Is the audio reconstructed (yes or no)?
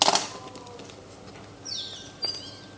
no